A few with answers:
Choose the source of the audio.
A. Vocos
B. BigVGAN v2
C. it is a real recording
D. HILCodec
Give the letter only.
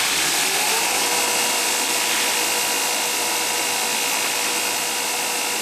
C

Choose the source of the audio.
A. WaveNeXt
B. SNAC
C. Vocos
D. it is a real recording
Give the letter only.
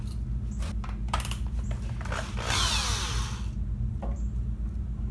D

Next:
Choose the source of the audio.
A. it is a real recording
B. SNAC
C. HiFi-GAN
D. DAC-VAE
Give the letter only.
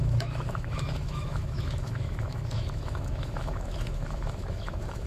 D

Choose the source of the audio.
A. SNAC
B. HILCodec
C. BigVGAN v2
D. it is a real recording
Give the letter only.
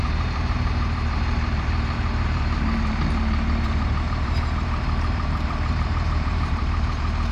C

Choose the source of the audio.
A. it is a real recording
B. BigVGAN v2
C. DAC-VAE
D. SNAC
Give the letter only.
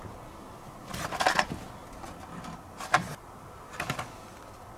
A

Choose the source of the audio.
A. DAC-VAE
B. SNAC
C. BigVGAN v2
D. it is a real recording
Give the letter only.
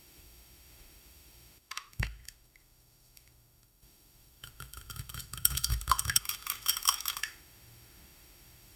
A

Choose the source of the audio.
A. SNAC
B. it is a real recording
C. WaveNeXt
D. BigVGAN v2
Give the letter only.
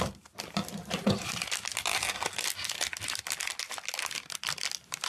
D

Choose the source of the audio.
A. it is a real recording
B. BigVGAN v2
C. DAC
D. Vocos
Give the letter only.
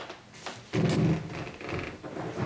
A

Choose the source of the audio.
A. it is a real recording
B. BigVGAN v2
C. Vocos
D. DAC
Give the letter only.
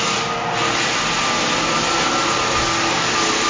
A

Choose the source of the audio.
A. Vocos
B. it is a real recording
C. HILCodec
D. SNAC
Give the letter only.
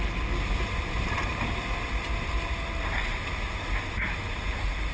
B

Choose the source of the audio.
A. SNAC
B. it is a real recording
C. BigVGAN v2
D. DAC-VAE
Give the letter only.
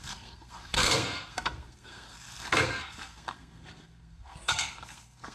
A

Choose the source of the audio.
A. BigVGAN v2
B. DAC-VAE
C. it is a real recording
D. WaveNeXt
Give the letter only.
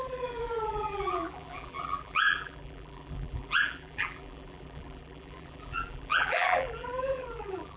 A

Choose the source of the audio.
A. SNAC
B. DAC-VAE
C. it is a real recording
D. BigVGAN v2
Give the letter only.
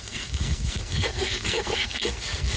A